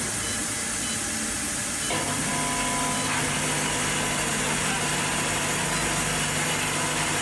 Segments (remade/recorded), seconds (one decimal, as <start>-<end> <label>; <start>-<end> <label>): 0.0-7.2 recorded